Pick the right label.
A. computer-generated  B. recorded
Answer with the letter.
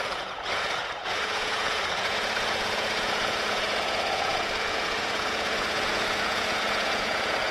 A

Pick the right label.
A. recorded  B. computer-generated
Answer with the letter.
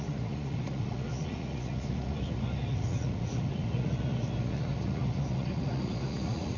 B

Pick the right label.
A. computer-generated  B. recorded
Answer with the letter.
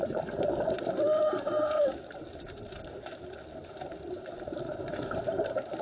A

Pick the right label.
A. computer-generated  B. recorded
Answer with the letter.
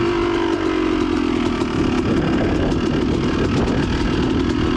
B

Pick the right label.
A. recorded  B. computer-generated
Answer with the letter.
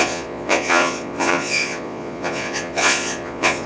B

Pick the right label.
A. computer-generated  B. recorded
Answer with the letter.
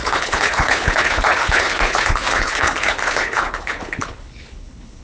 A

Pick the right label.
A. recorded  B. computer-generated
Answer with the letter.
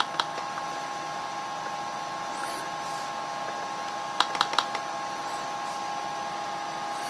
A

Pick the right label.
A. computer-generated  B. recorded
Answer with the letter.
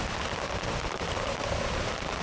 B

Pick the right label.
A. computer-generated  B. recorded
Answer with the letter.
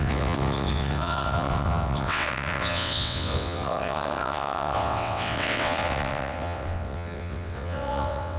A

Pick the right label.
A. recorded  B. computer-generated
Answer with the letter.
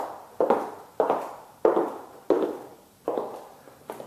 A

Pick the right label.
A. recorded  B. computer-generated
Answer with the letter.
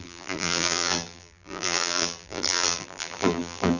B